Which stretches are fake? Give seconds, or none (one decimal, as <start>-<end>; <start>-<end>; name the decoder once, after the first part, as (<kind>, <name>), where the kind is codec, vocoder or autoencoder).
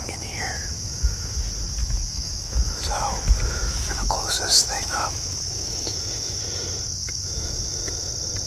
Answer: 0.0-1.4 (autoencoder, DAC-VAE); 1.8-6.4; 7.0-8.1